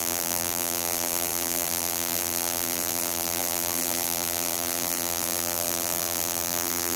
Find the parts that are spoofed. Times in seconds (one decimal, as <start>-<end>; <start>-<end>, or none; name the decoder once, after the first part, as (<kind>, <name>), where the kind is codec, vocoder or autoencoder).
0.0-7.0 (vocoder, BigVGAN v2)